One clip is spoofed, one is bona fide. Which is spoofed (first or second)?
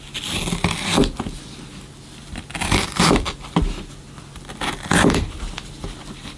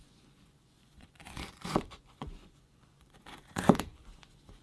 second